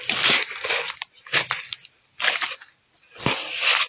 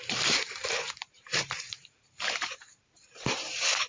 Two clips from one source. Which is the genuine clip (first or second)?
first